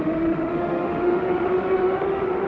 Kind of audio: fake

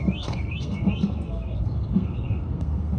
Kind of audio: fake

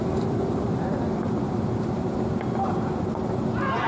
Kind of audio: real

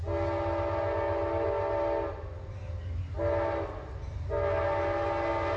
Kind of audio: real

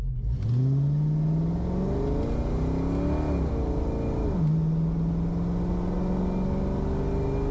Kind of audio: real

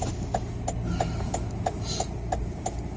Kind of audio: real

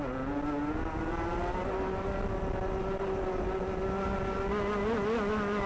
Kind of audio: real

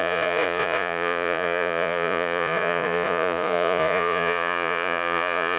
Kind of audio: fake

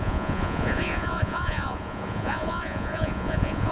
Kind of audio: fake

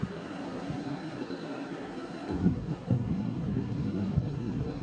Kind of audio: fake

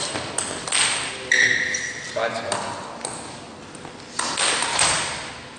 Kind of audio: real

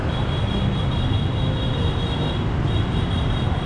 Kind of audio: real